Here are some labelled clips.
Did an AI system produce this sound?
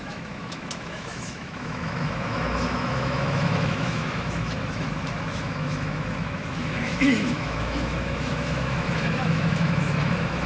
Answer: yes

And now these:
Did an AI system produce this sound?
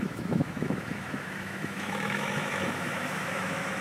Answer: yes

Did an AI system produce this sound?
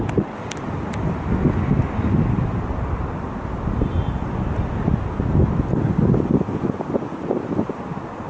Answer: no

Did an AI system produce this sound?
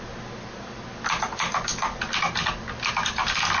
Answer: no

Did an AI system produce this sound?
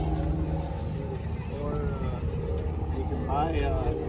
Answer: no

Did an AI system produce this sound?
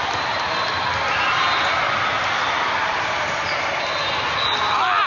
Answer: yes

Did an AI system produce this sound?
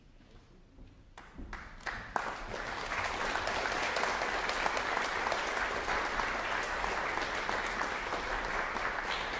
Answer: no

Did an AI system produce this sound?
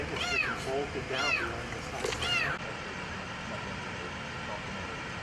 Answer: no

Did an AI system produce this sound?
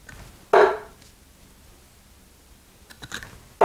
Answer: no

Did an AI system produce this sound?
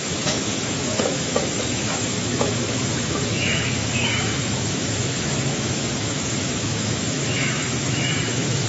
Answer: yes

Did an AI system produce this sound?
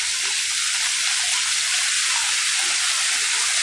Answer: no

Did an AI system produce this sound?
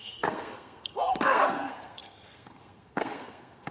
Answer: yes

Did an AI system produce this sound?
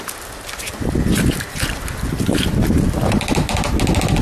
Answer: no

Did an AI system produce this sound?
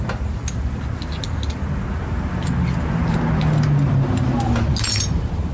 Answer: no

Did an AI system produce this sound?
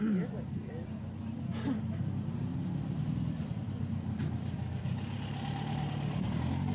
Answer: no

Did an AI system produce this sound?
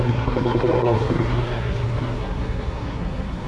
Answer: yes